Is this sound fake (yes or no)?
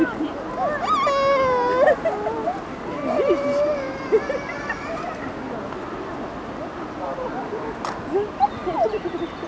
no